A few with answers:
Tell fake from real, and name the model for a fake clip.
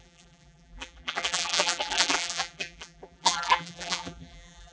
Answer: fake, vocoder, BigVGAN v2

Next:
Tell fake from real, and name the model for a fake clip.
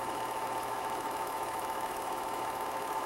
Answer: fake, autoencoder, DAC-VAE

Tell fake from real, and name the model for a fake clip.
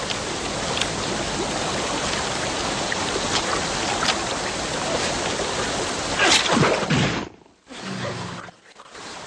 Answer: real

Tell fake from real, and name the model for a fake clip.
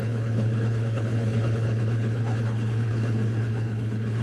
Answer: fake, codec, HILCodec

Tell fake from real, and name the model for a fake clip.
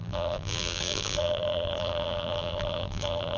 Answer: fake, vocoder, BigVGAN v2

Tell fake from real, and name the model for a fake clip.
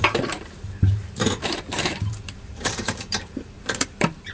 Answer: fake, vocoder, BigVGAN v2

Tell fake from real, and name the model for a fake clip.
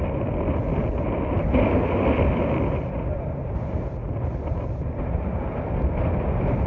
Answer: real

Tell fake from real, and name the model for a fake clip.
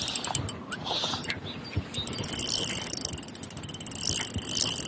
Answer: real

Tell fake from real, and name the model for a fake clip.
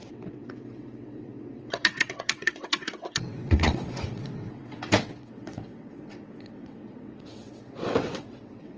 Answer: fake, vocoder, WaveNeXt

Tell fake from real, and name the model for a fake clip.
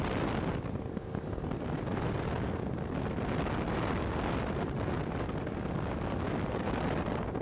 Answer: real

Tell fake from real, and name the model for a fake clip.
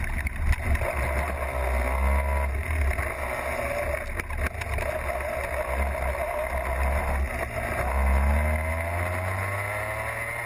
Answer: real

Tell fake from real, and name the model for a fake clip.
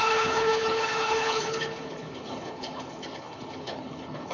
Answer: fake, codec, HILCodec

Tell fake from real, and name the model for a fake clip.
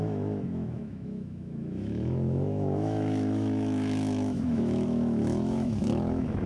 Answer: fake, autoencoder, DAC-VAE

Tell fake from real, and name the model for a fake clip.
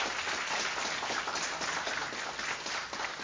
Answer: real